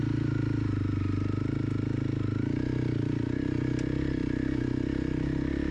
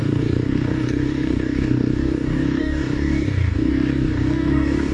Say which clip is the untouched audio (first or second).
first